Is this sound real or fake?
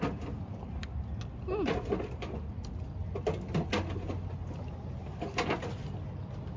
real